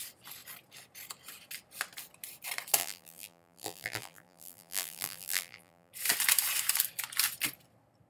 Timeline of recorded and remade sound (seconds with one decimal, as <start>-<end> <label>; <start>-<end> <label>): 0.0-2.8 recorded; 2.8-5.9 remade; 5.9-8.1 recorded